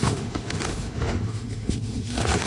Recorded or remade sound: remade